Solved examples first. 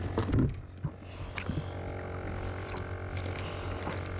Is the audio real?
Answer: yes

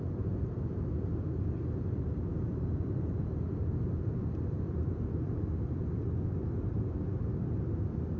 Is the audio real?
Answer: yes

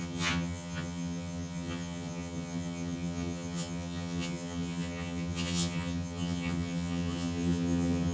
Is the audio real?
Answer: no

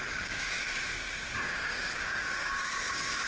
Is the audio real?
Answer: no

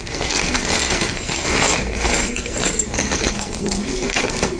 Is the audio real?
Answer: no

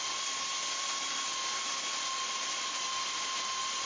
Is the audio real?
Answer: yes